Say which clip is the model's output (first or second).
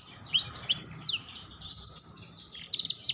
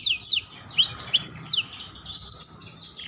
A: first